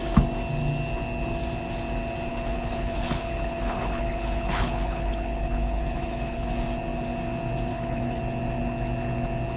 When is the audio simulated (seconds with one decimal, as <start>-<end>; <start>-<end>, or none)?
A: 2.3-6.5; 7.7-8.2